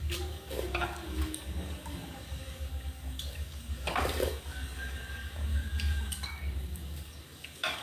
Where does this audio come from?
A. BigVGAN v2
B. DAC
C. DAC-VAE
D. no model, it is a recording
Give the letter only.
B